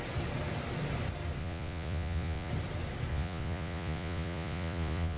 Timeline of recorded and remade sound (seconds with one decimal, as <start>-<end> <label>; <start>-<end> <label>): 0.0-1.4 recorded; 1.4-2.5 remade; 2.5-3.1 recorded; 3.1-5.2 remade